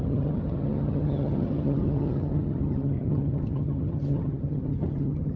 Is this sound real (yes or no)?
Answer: no